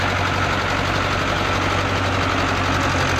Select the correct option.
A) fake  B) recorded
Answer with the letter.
B